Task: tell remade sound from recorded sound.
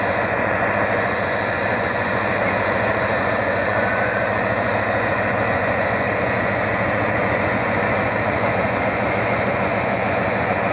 remade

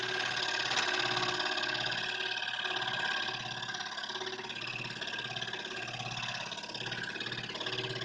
recorded